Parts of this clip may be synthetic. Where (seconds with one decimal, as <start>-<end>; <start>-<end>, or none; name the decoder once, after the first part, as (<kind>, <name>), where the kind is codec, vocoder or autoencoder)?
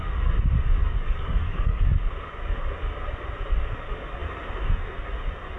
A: 0.8-2.0 (codec, DAC)